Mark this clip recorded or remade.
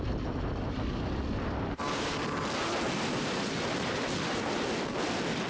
remade